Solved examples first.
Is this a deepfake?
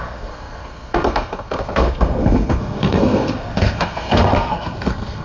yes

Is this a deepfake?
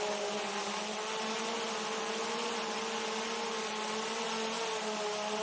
no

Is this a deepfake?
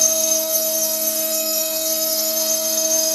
yes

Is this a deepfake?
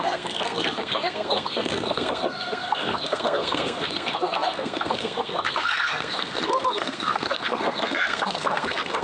yes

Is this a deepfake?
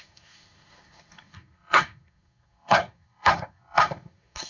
yes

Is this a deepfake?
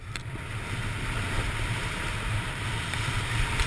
no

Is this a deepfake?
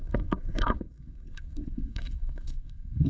yes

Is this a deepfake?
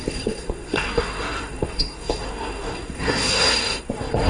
yes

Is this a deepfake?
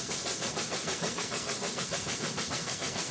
yes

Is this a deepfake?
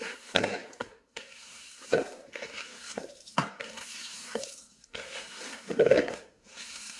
yes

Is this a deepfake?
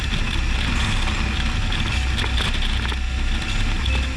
no